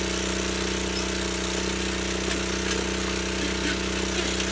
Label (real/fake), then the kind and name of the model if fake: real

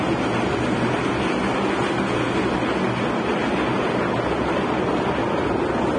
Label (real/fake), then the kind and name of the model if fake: real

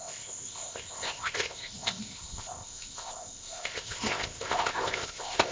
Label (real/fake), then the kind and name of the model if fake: fake, codec, ZipCodec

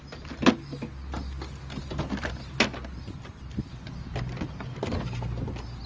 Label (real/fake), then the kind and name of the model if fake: real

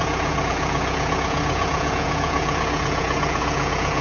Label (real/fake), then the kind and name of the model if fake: fake, vocoder, Vocos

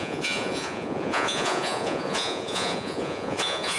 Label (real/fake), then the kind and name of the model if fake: fake, vocoder, Vocos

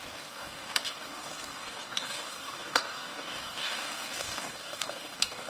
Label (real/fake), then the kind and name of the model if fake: fake, codec, DAC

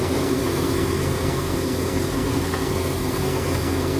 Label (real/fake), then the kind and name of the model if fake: fake, codec, SNAC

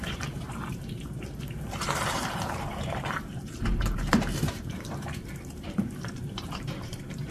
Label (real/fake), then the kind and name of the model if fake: fake, vocoder, BigVGAN v2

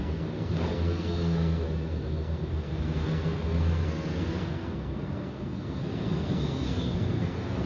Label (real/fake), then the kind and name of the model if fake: fake, codec, SNAC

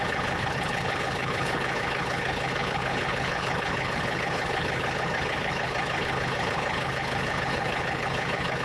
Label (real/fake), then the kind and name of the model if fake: fake, codec, HILCodec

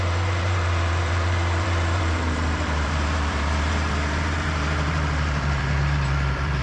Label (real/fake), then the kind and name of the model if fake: fake, vocoder, BigVGAN v2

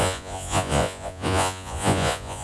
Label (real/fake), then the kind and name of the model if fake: fake, vocoder, Vocos